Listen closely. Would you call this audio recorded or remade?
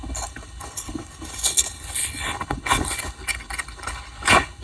remade